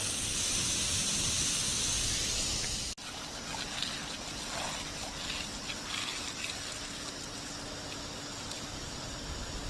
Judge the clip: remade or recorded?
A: recorded